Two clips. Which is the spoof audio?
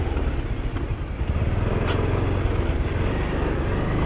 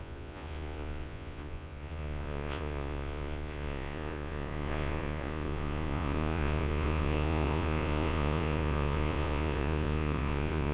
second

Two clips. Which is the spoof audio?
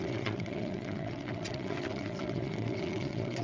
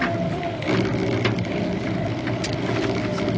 first